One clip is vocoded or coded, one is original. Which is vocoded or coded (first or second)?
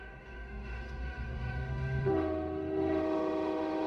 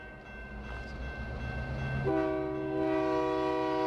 first